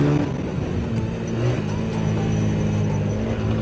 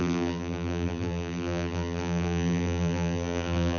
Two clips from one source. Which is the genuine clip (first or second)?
first